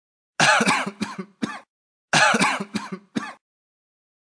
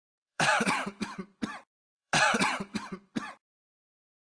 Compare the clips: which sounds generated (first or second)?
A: second